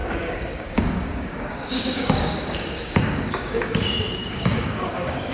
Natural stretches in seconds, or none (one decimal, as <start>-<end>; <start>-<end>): none